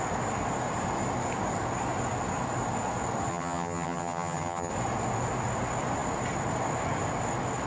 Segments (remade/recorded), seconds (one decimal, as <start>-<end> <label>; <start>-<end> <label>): 0.0-3.3 recorded; 3.3-4.7 remade; 4.7-7.7 recorded